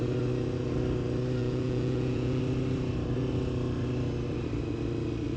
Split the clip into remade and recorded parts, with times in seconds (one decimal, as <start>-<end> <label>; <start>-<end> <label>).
0.0-1.4 recorded; 1.4-2.4 remade; 2.4-5.4 recorded